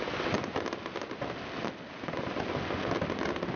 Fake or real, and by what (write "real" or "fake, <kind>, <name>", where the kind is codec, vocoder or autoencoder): real